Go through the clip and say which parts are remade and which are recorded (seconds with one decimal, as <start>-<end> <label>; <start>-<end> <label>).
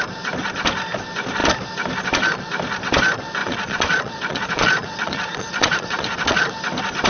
0.0-3.4 recorded; 3.4-6.5 remade; 6.5-7.1 recorded